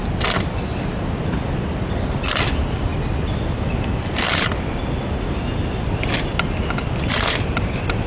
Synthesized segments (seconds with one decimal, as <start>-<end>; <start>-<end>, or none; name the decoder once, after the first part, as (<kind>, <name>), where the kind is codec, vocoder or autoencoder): none